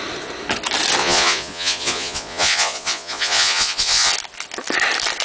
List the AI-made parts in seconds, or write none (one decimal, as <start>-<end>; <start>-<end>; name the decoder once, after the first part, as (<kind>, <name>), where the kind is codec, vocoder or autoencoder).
1.0-4.1 (vocoder, Vocos)